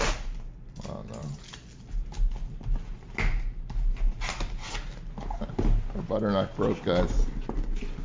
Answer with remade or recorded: recorded